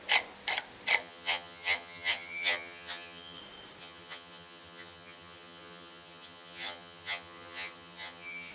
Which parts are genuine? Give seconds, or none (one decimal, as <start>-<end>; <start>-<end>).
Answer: 0.0-1.0; 3.4-3.8